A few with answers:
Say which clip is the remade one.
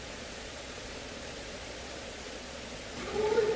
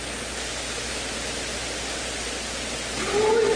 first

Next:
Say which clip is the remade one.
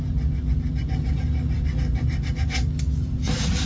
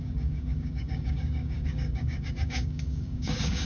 second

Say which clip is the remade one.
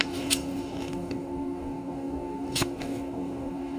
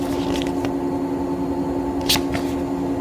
first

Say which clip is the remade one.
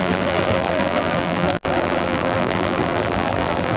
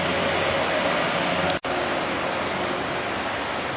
first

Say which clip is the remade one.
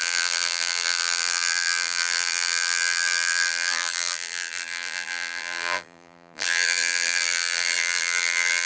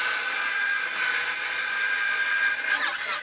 first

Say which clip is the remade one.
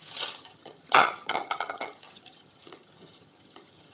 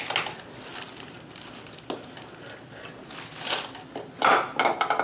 first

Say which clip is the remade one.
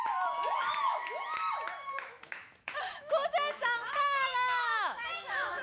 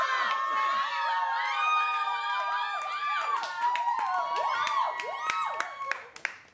first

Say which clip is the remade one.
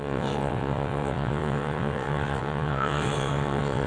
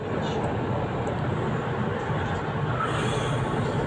first